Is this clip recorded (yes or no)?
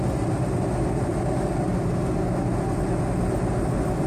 yes